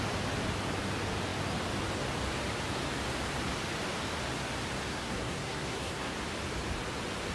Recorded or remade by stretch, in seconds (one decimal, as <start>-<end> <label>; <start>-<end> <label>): 0.0-4.9 recorded; 4.9-6.1 remade; 6.1-7.3 recorded